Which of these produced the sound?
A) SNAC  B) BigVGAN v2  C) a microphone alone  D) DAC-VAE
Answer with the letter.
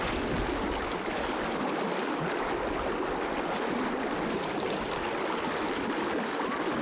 C